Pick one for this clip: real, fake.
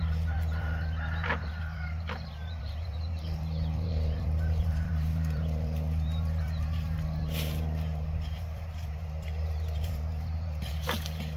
fake